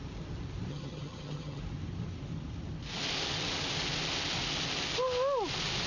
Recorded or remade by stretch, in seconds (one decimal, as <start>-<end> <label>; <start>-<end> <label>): 0.0-0.7 recorded; 0.7-1.6 remade; 1.6-5.9 recorded